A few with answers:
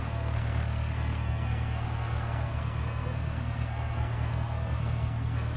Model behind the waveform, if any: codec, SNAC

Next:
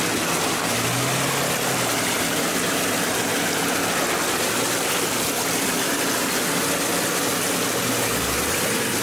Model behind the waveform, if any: none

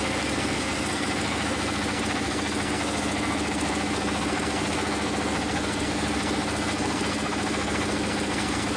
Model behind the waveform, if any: codec, SNAC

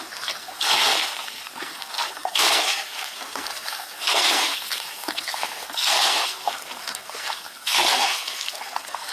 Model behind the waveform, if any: codec, SNAC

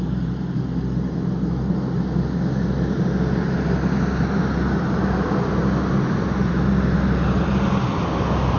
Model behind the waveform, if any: none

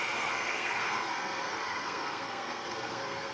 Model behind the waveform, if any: codec, SNAC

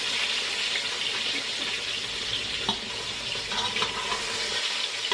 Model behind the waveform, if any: none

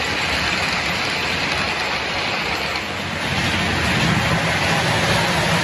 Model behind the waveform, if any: none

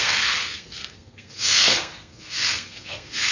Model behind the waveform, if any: codec, SNAC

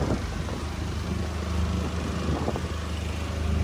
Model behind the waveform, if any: none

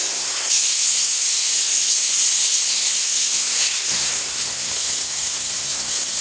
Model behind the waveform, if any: codec, SNAC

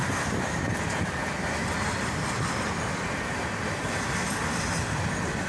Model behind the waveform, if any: none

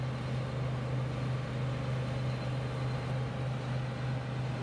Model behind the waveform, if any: none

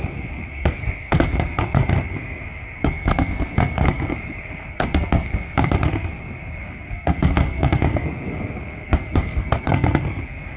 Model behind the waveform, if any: codec, SNAC